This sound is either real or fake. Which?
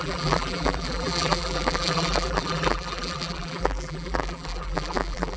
fake